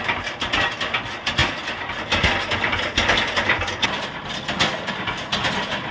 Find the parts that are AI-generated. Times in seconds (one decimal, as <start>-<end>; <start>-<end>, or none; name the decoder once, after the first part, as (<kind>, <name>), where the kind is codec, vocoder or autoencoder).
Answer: none